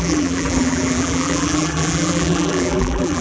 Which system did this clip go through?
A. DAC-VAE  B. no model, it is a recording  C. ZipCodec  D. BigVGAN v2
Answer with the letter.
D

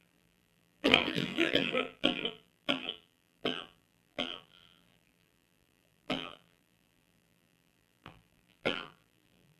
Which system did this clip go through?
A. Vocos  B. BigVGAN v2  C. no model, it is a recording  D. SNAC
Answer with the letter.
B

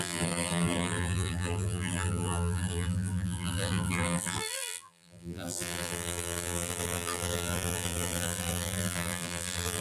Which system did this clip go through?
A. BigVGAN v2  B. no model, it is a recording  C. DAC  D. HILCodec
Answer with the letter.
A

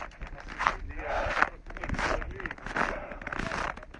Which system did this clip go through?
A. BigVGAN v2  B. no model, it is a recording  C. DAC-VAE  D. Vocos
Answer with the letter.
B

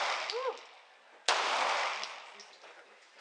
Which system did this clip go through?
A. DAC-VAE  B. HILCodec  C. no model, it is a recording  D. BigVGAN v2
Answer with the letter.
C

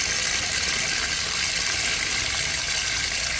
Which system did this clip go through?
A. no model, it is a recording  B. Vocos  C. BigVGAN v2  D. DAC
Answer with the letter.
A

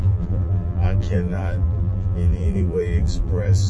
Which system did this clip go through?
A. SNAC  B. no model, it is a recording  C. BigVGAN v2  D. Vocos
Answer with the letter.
C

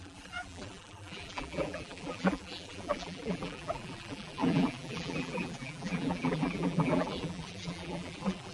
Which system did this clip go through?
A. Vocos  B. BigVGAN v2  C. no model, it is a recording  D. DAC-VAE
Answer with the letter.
B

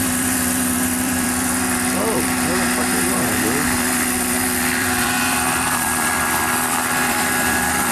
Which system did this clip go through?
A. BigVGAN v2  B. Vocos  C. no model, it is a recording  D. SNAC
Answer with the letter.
A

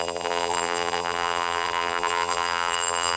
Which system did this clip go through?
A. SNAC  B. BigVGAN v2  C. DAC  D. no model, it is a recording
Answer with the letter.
B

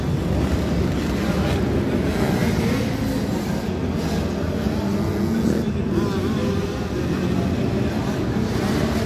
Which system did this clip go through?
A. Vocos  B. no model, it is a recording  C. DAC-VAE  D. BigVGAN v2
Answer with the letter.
B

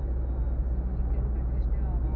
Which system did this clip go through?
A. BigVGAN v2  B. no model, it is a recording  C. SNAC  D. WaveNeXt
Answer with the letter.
B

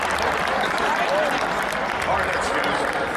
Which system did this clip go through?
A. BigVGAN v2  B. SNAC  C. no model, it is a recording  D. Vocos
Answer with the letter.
C